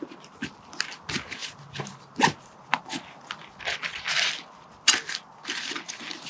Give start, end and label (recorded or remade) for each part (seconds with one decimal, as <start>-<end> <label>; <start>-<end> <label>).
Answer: 0.0-6.3 recorded